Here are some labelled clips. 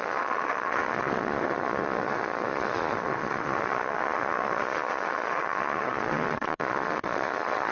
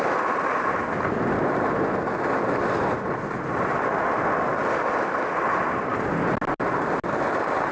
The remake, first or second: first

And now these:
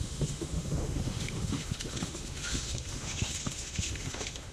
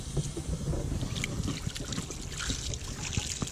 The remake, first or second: first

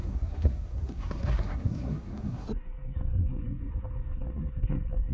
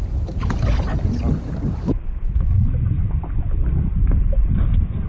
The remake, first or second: first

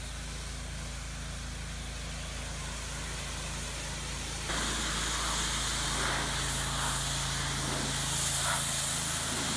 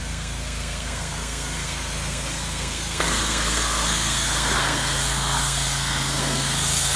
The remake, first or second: second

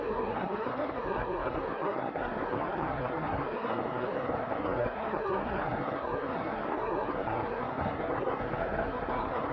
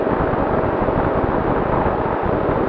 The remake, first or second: first